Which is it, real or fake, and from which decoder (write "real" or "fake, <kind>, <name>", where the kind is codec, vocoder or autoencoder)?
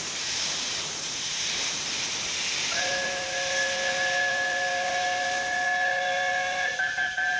fake, vocoder, BigVGAN v2